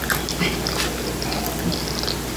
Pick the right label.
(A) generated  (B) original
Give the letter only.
B